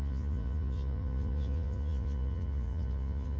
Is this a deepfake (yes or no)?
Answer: yes